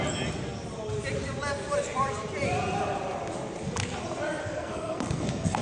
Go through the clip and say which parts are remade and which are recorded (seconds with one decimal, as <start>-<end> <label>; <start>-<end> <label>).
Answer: 0.0-4.4 recorded; 4.4-5.6 remade